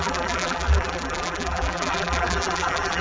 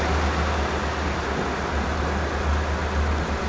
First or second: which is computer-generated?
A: first